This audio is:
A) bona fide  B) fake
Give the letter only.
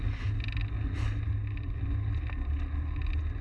A